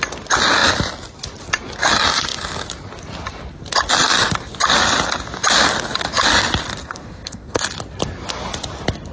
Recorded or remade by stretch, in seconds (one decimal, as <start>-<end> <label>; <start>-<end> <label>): 0.0-6.8 recorded; 6.8-7.6 remade; 7.6-9.1 recorded